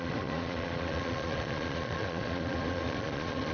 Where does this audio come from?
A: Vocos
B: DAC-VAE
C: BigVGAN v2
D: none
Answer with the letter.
A